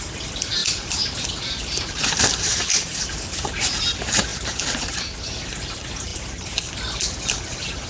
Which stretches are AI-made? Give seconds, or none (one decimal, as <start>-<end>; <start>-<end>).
6.1-6.8